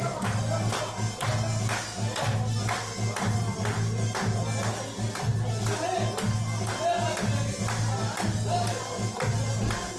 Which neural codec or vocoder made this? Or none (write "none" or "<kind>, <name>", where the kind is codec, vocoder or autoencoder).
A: none